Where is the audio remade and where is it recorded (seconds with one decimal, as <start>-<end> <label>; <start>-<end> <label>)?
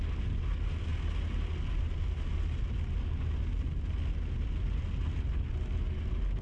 0.0-6.4 recorded